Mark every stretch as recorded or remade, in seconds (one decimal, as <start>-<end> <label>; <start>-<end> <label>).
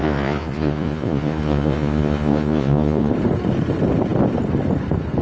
0.0-3.1 remade; 3.1-5.2 recorded